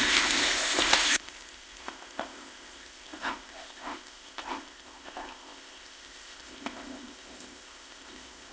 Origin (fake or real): fake